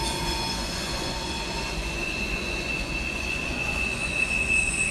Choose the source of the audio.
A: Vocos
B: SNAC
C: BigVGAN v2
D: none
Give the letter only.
A